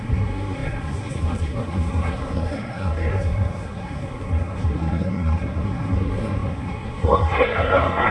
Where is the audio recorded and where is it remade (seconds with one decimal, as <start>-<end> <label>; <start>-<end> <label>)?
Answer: 0.0-8.1 remade